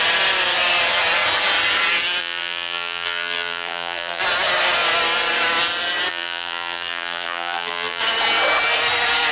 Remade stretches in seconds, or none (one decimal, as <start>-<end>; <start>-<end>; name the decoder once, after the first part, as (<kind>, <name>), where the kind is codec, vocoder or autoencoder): 2.2-4.2 (vocoder, BigVGAN v2); 6.1-8.0